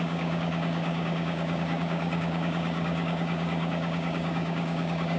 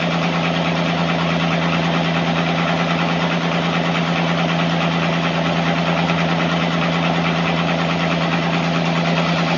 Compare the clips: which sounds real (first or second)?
second